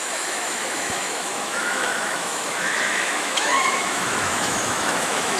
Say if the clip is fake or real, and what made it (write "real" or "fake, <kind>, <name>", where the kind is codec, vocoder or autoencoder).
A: fake, autoencoder, DAC-VAE